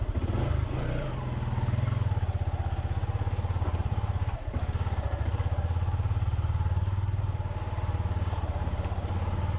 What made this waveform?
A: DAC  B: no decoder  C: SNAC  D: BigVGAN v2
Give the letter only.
B